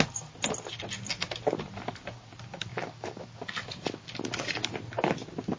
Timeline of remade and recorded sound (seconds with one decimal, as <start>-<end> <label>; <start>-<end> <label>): 0.0-2.7 recorded; 2.7-3.4 remade; 3.4-5.6 recorded